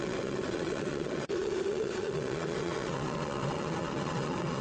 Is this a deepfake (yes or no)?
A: yes